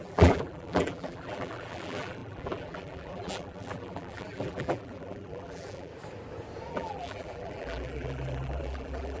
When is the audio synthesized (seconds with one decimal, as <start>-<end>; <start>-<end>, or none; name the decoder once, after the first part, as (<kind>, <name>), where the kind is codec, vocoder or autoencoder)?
0.0-5.9 (vocoder, BigVGAN v2); 6.7-9.2